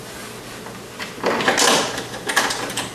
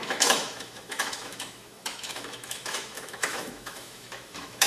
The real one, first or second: first